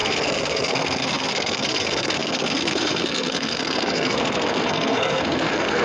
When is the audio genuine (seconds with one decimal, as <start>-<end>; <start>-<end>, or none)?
none